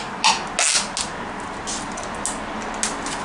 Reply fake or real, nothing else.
real